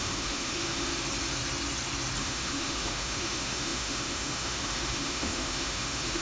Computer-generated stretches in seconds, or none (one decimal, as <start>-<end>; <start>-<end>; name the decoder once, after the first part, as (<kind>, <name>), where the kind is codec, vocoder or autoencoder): 0.0-0.9 (autoencoder, DAC-VAE); 2.2-6.2